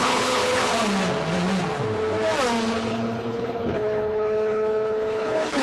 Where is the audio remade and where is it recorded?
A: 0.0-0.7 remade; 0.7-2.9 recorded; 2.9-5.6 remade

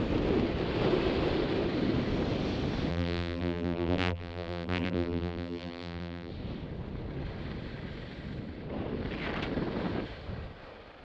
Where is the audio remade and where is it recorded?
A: 0.0-2.9 recorded; 2.9-6.3 remade; 6.3-11.0 recorded

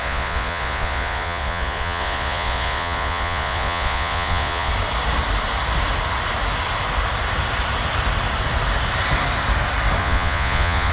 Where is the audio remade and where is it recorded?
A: 0.0-4.7 remade; 4.7-10.0 recorded; 10.0-10.9 remade